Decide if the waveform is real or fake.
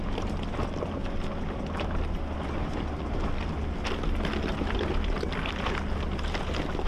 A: real